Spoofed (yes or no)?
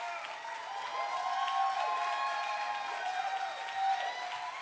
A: no